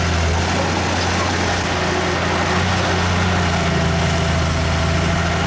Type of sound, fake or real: real